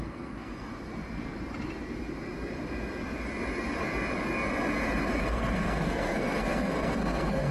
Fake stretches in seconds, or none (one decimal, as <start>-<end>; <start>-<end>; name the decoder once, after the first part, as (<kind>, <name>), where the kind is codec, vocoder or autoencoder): 0.0-0.7 (codec, SNAC); 5.2-7.5